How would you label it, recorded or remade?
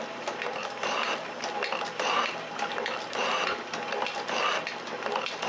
recorded